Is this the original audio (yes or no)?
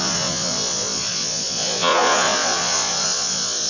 no